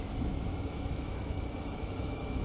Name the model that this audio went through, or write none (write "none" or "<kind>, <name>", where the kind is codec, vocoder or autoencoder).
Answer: autoencoder, DAC-VAE